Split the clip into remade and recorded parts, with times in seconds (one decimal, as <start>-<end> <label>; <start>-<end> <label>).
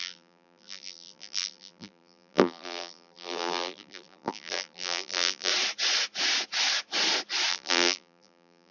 0.0-5.5 remade; 5.5-7.5 recorded; 7.5-8.7 remade